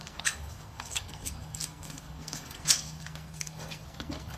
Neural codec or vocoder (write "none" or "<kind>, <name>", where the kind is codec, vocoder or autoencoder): codec, SNAC